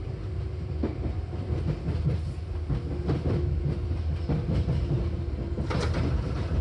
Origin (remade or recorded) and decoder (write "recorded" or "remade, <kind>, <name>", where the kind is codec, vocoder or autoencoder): recorded